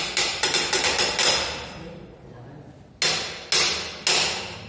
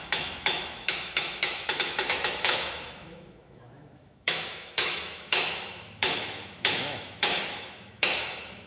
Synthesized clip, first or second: second